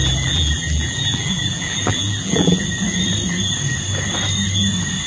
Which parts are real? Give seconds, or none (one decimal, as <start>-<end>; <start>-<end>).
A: 2.6-5.1